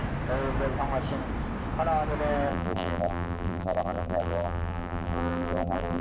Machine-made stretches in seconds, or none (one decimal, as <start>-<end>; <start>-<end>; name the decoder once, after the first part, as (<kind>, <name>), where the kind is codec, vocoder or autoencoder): 2.5-6.0 (vocoder, BigVGAN v2)